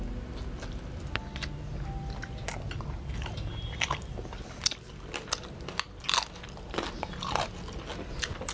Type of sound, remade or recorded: recorded